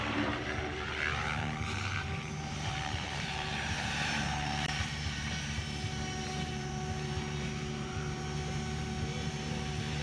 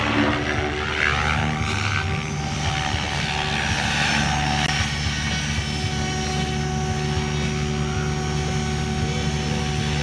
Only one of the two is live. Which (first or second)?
second